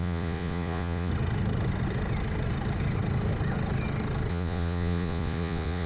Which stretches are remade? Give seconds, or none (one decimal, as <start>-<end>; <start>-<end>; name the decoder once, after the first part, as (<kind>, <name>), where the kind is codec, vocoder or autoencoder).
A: 0.0-1.1 (vocoder, Vocos); 4.3-5.9